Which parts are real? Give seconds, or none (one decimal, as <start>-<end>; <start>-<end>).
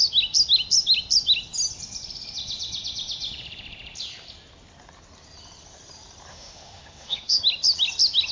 0.0-6.3; 7.4-8.3